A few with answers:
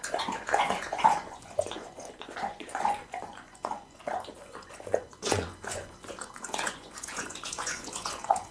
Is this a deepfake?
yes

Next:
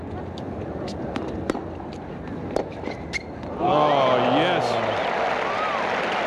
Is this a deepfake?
no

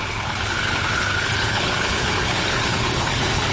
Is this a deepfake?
yes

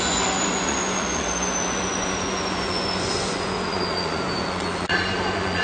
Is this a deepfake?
yes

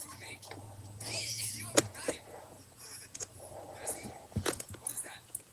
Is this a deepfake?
yes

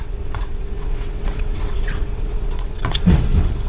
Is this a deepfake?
yes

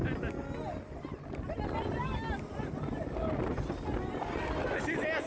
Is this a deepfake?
no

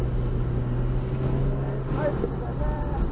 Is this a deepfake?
no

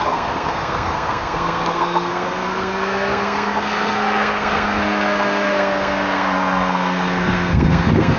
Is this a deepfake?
yes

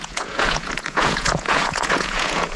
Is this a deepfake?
yes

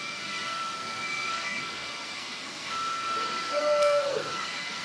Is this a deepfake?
yes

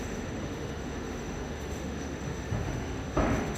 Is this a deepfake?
yes